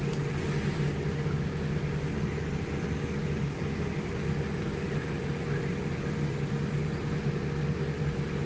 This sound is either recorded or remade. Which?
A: recorded